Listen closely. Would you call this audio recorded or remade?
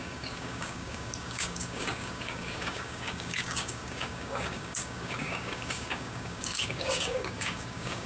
remade